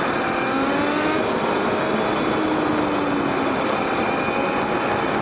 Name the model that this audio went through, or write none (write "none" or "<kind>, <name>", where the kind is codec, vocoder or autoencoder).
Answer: none